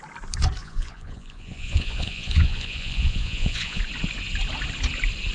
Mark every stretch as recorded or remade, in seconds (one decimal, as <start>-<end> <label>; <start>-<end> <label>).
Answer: 0.0-0.6 recorded; 0.6-3.8 remade; 3.8-5.3 recorded